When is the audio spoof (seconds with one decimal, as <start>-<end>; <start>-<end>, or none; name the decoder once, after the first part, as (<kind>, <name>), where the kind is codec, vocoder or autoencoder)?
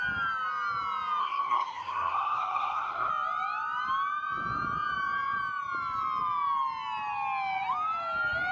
1.2-3.1 (codec, SNAC)